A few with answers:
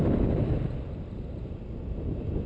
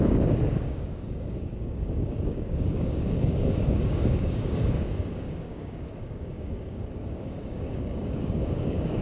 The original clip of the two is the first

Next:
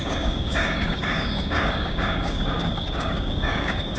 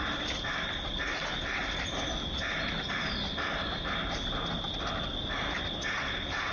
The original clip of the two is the second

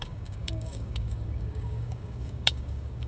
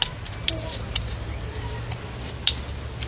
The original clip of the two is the second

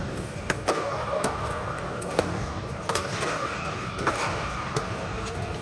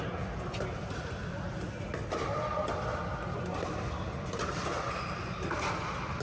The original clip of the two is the second